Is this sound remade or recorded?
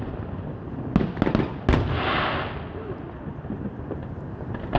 recorded